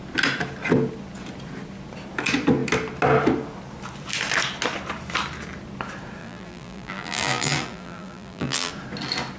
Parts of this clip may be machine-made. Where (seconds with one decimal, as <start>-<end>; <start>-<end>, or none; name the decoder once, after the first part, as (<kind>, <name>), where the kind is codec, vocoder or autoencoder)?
6.2-8.7 (vocoder, BigVGAN v2)